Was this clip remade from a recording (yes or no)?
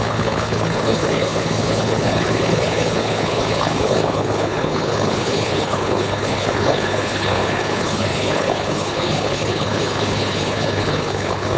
yes